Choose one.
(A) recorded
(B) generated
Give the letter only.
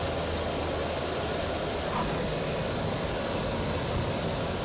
A